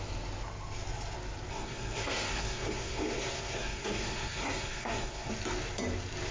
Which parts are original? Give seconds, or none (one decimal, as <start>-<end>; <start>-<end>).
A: 0.0-1.5; 5.3-6.3